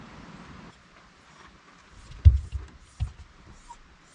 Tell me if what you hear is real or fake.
real